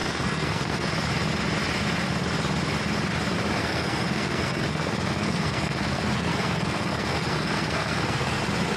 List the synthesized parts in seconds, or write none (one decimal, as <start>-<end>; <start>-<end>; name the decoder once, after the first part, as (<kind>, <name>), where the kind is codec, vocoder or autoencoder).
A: 0.0-0.9 (codec, SNAC); 3.6-8.4